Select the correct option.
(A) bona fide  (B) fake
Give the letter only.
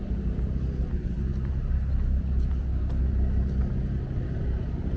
A